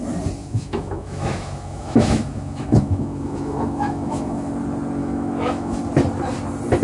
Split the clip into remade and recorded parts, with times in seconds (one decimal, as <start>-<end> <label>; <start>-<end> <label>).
0.0-0.4 recorded; 0.4-4.5 remade; 4.5-5.0 recorded; 5.0-5.8 remade; 5.8-6.8 recorded